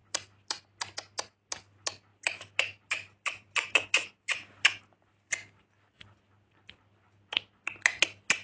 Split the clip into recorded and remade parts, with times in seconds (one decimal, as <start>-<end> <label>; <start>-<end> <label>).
0.0-0.6 remade; 0.6-2.1 recorded; 2.1-6.7 remade; 6.7-8.4 recorded